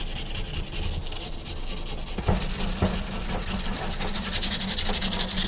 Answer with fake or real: real